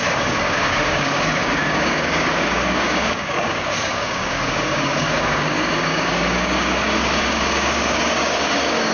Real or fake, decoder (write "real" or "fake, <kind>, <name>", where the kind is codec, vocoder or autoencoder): fake, codec, DAC